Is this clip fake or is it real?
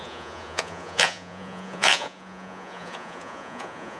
fake